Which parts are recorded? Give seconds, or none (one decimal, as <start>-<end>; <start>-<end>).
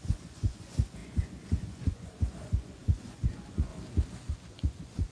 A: 3.7-4.3